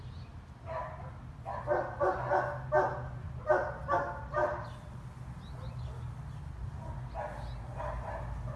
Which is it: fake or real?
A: real